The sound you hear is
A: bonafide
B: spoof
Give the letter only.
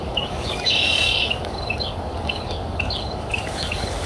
B